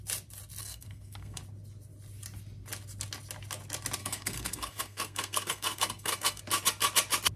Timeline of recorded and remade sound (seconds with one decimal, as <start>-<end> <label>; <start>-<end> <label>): 0.0-0.6 recorded; 0.6-1.4 remade; 1.4-4.0 recorded; 4.0-6.4 remade; 6.4-7.4 recorded